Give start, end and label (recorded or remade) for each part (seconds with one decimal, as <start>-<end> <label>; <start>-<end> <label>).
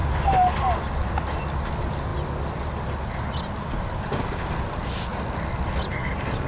0.0-6.5 recorded